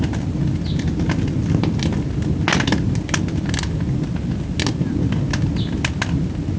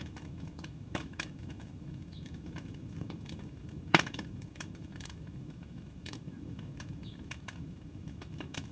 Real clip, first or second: first